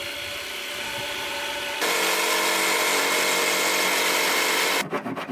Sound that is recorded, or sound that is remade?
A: recorded